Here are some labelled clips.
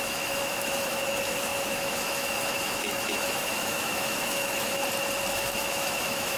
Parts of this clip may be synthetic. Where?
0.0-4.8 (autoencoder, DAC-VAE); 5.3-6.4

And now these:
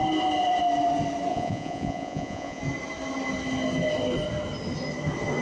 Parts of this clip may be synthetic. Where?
1.3-2.6 (vocoder, Vocos)

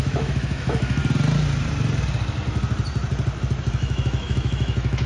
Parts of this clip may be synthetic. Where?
0.0-1.0 (autoencoder, DAC-VAE); 3.7-5.1

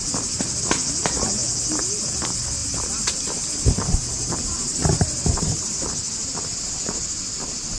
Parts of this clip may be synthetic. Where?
0.0-0.6 (vocoder, BigVGAN v2); 2.6-5.8

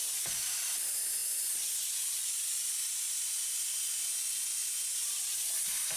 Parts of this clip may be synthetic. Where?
none

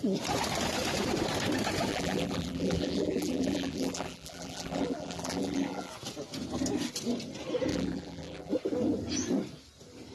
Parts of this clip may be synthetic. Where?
1.9-5.9 (vocoder, BigVGAN v2); 7.7-8.5

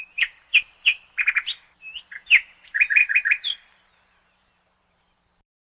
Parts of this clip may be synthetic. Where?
0.0-5.7 (vocoder, BigVGAN v2)